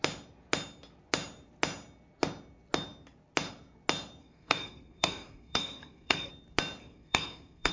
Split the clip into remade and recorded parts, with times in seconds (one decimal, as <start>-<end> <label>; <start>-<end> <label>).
0.0-4.2 recorded; 4.2-6.3 remade; 6.3-6.8 recorded; 6.8-7.7 remade